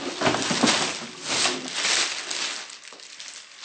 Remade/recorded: recorded